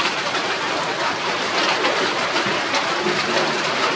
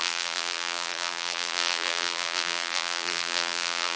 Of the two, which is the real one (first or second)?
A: first